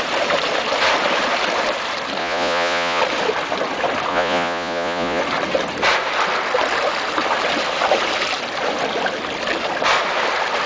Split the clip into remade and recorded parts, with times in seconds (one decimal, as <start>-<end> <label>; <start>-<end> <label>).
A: 0.0-2.2 recorded; 2.2-3.0 remade; 3.0-4.1 recorded; 4.1-5.2 remade; 5.2-10.7 recorded